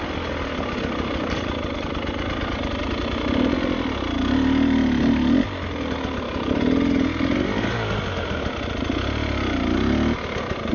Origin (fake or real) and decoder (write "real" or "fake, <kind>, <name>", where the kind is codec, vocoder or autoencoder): real